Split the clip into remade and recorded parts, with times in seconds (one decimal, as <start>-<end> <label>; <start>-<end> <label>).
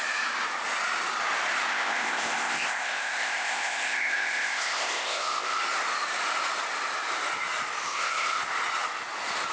0.0-1.7 recorded; 1.7-5.6 remade; 5.6-7.8 recorded; 7.8-8.4 remade; 8.4-9.5 recorded